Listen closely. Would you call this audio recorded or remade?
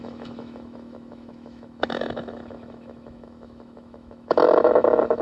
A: remade